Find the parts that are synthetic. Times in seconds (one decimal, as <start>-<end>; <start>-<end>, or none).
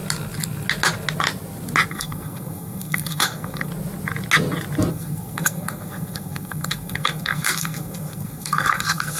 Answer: 1.9-3.7; 4.9-9.2